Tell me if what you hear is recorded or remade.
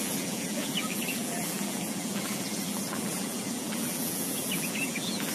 remade